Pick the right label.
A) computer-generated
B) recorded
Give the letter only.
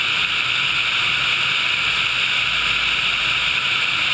B